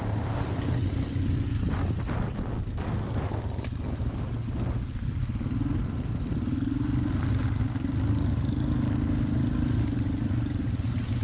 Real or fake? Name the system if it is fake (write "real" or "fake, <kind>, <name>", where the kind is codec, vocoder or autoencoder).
real